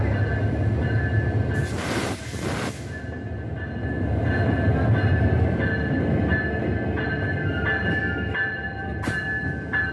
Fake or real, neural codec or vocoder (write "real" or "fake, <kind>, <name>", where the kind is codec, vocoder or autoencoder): real